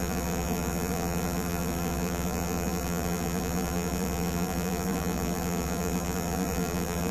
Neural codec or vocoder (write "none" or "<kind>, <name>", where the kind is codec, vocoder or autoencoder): vocoder, BigVGAN v2